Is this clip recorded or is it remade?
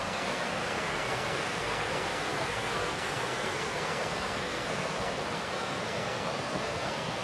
remade